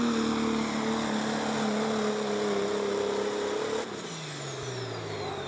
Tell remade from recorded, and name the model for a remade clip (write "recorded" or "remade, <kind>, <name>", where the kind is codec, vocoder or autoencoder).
recorded